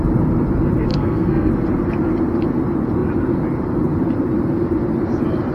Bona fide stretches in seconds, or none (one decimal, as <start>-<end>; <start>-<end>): 0.0-0.9; 1.5-5.5